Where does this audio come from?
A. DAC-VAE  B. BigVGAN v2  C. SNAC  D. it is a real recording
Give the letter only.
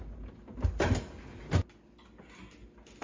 D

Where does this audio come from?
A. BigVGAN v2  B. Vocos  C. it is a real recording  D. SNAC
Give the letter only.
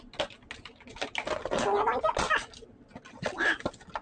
C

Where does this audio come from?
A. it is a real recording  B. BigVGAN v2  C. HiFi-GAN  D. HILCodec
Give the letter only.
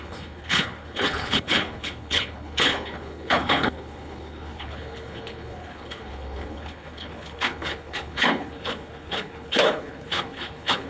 D